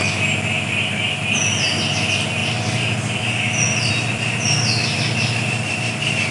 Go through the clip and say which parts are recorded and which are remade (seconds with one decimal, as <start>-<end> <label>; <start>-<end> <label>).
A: 0.0-6.3 recorded